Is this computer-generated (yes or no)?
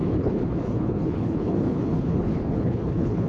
yes